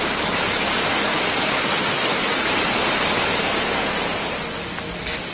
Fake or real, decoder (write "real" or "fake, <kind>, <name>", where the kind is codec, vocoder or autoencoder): real